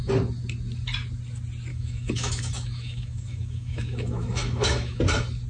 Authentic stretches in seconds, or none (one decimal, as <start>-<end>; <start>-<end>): 0.0-1.7; 5.0-5.5